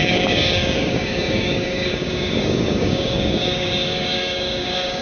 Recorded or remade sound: remade